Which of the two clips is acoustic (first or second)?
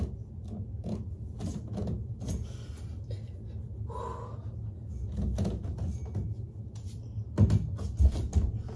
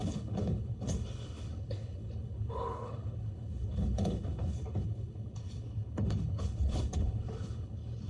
first